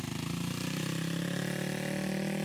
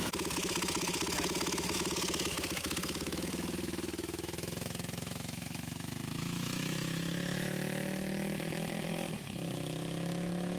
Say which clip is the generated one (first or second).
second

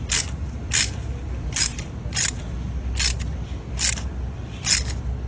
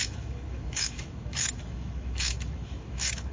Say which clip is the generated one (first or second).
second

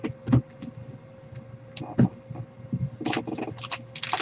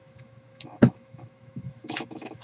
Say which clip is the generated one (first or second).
second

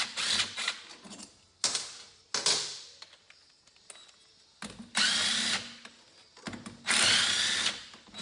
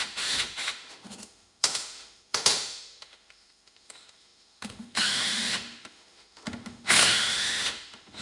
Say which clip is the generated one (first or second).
second